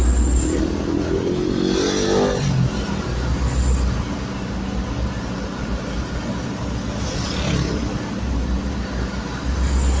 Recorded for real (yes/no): yes